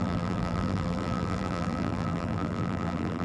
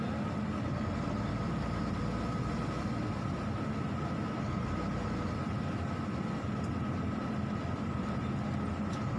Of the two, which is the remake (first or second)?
first